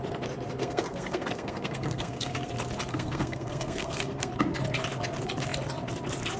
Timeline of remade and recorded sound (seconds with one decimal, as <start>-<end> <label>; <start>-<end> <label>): 0.0-0.6 recorded; 0.6-2.5 remade; 2.5-2.9 recorded; 2.9-4.3 remade; 4.3-6.4 recorded

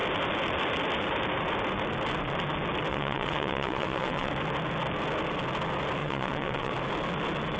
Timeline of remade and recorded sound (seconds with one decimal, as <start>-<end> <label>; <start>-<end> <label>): 0.0-2.9 recorded; 2.9-4.3 remade; 4.3-6.0 recorded; 6.0-6.7 remade; 6.7-7.6 recorded

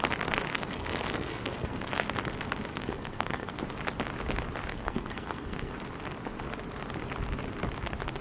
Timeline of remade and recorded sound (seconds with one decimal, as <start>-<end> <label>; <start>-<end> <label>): 0.0-0.5 recorded; 0.5-1.9 remade; 1.9-2.7 recorded; 2.7-3.6 remade; 3.6-4.7 recorded; 4.7-5.7 remade; 5.7-8.2 recorded

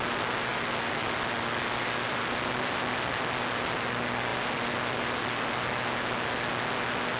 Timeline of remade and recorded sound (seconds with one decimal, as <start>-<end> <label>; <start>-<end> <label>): 0.0-7.2 recorded

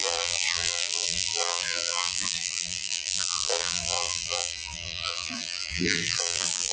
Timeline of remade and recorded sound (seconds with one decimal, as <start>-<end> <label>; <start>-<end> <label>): 0.0-6.7 remade

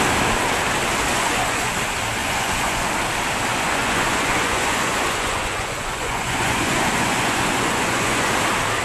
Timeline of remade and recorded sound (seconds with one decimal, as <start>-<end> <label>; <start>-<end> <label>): 0.0-1.1 recorded; 1.1-1.7 remade; 1.7-2.2 recorded; 2.2-2.9 remade; 2.9-3.5 recorded; 3.5-8.3 remade; 8.3-8.8 recorded

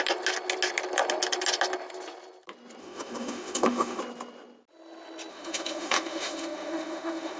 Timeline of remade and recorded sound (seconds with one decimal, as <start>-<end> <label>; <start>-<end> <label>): 0.0-2.8 recorded; 2.8-4.0 remade; 4.0-5.3 recorded; 5.3-7.4 remade